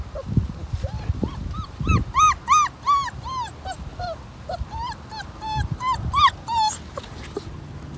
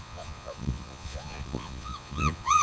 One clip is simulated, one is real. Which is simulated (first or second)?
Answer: second